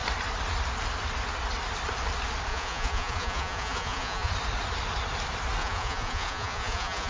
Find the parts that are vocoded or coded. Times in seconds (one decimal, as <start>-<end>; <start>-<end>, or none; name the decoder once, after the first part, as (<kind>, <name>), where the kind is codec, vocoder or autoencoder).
2.5-4.3 (vocoder, Vocos); 5.6-7.1